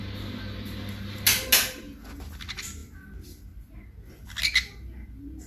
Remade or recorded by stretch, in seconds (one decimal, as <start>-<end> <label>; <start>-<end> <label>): 0.0-5.5 recorded